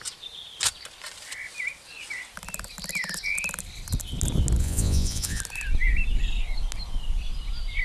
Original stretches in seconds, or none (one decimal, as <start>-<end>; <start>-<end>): 0.0-4.6; 5.4-7.8